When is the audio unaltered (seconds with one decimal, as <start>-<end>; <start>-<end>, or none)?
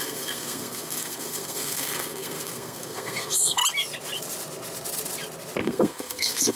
3.6-5.6